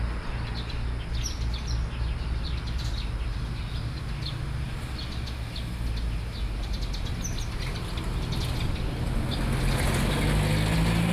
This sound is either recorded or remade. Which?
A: recorded